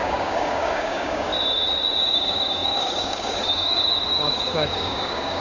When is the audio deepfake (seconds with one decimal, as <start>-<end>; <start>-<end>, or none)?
0.0-1.3; 2.0-5.4